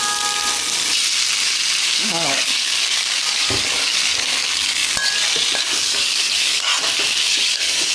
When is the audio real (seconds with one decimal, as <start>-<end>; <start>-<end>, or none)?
0.0-1.8; 4.8-5.6; 6.7-7.3